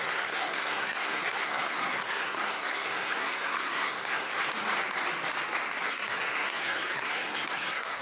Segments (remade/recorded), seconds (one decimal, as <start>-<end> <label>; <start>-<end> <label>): 0.0-4.3 remade; 4.3-5.9 recorded; 5.9-8.0 remade